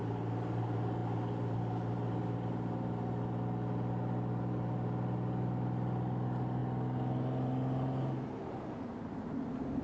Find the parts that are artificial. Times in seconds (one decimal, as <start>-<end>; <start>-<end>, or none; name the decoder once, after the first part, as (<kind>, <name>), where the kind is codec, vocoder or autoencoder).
none